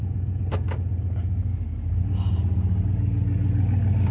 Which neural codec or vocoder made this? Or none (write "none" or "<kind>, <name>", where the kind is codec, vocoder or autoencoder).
none